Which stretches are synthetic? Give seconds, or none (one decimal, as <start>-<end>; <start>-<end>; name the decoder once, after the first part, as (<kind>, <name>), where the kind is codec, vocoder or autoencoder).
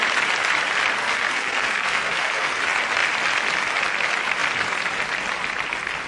1.0-2.6 (codec, SNAC)